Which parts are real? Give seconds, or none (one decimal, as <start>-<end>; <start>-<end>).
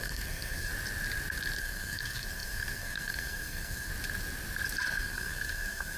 0.7-1.6; 3.9-4.9